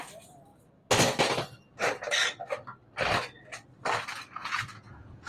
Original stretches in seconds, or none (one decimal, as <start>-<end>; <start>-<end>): 0.0-4.4

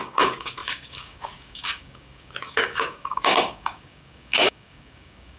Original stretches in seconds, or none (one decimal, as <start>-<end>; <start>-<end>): none

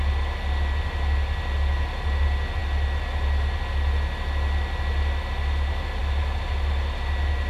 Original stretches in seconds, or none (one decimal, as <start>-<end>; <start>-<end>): 0.0-7.5

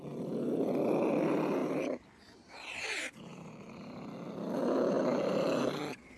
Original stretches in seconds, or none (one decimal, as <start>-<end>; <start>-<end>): 0.0-1.6; 4.1-5.0